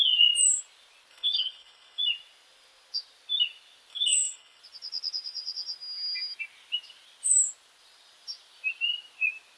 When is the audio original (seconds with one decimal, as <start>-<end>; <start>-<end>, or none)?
0.0-1.1; 2.0-3.9; 4.6-9.6